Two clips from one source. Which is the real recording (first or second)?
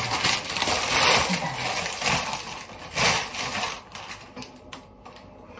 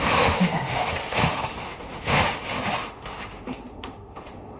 first